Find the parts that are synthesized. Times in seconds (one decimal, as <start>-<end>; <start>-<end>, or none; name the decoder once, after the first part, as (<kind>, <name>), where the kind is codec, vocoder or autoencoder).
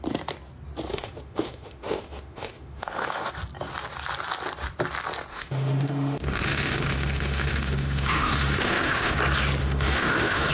0.9-3.3 (autoencoder, DAC-VAE); 5.3-9.2; 9.6-10.5